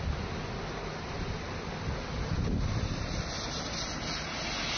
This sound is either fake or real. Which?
real